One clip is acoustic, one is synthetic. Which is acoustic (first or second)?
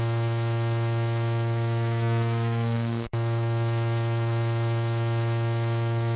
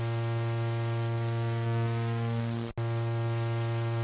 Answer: second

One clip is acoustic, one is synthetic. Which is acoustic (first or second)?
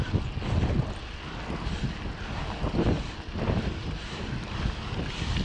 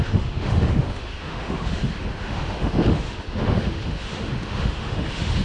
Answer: first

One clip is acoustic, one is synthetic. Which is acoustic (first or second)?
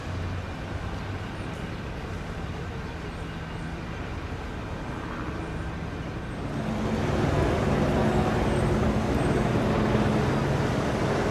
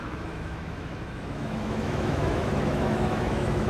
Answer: first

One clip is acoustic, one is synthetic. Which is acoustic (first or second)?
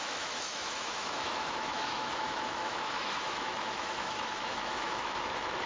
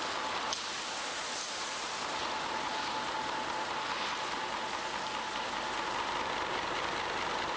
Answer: second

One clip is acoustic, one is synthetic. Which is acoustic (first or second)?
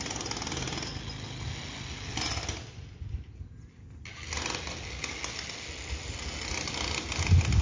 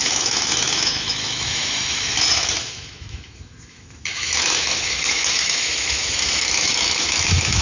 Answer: first